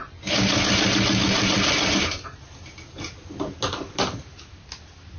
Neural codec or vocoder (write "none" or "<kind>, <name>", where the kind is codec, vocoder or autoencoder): none